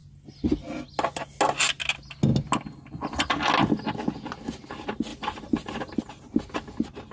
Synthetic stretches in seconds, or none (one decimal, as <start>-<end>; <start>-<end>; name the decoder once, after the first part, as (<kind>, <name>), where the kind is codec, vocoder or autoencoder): none